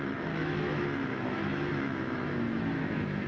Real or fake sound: fake